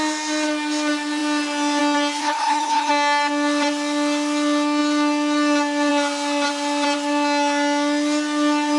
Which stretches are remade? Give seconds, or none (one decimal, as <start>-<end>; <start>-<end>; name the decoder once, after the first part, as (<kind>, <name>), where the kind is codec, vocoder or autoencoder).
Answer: 2.2-2.9 (codec, HILCodec)